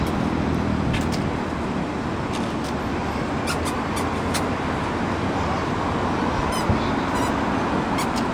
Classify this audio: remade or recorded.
recorded